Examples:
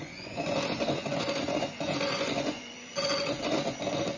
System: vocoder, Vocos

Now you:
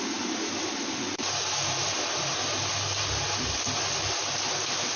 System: none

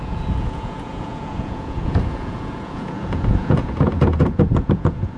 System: vocoder, Vocos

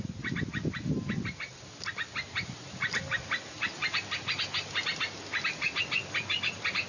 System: none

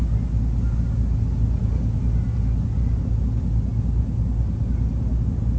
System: none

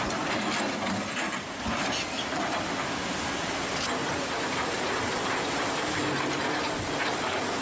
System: none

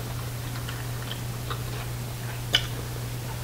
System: none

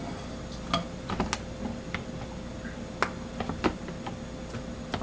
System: none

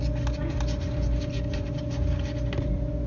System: none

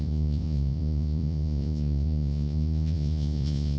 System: vocoder, Vocos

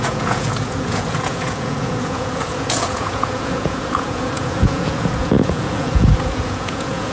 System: vocoder, Vocos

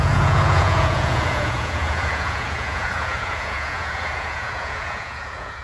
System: vocoder, Vocos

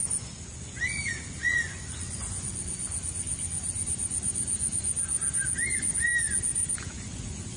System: vocoder, Vocos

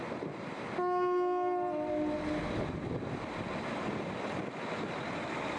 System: none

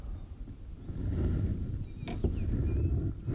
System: none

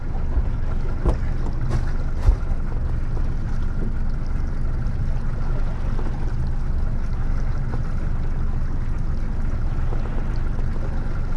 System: none